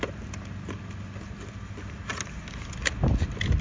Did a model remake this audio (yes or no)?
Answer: no